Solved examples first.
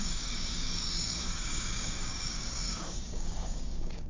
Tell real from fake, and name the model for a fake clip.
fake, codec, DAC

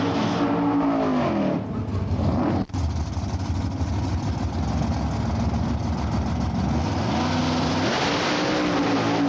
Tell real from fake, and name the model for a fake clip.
real